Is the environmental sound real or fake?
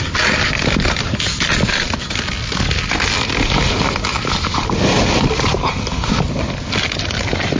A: real